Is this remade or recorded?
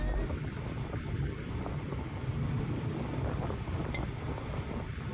remade